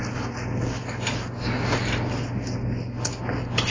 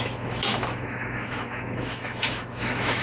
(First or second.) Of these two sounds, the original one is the first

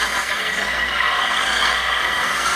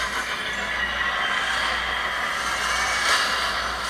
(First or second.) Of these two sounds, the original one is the second